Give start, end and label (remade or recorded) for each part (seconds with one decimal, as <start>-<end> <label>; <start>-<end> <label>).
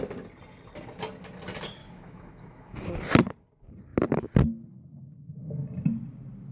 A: 0.0-1.8 recorded; 1.8-2.9 remade; 2.9-6.5 recorded